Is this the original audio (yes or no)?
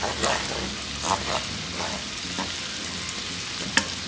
yes